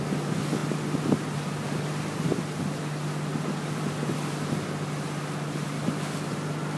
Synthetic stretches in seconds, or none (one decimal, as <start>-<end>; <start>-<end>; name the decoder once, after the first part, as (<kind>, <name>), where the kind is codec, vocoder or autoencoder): none